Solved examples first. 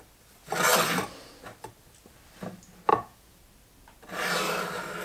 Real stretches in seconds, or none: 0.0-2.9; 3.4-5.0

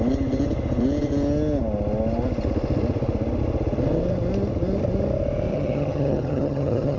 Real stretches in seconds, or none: 0.0-5.5

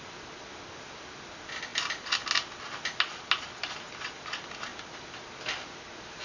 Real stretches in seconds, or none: 0.0-6.2